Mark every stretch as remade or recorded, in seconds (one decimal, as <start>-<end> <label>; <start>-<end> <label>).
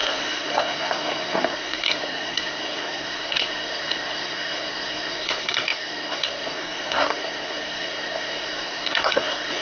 0.0-9.6 remade